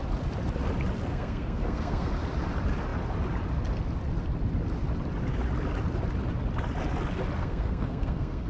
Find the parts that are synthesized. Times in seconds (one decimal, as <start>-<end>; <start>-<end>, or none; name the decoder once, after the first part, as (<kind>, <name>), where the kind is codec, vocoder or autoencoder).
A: 1.1-2.1 (codec, SNAC); 7.4-8.5